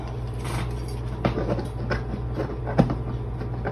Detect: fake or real real